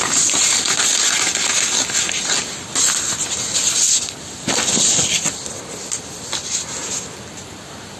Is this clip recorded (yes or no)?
yes